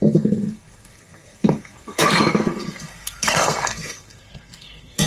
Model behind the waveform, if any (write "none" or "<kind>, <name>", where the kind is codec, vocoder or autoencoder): codec, SNAC